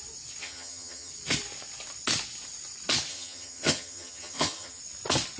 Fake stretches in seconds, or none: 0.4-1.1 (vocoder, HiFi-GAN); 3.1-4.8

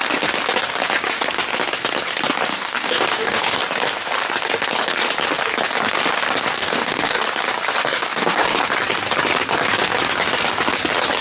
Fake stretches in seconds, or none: 2.5-3.6 (codec, DAC); 6.6-7.2; 7.8-8.6